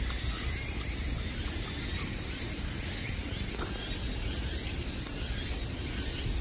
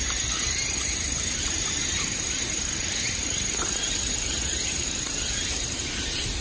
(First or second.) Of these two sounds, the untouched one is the first